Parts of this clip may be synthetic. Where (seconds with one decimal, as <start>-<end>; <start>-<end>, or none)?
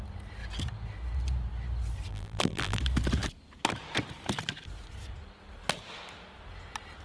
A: 2.1-2.8